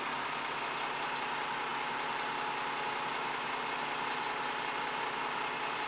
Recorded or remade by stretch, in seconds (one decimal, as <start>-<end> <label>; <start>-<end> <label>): 0.0-5.9 recorded